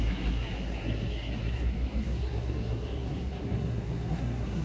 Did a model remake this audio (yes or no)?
yes